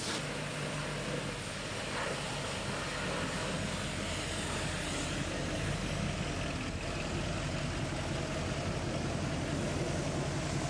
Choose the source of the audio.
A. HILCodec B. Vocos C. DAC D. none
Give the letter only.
D